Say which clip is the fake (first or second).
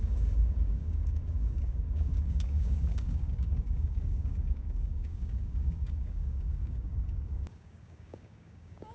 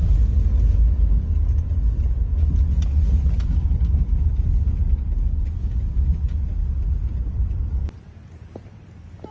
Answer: first